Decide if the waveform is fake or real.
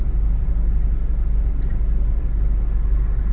real